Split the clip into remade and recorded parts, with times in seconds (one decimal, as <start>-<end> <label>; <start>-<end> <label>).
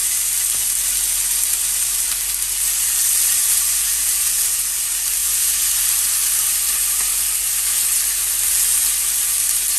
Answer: 0.0-3.4 recorded; 3.4-4.6 remade; 4.6-5.2 recorded; 5.2-5.7 remade; 5.7-9.8 recorded